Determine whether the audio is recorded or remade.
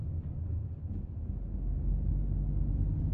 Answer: recorded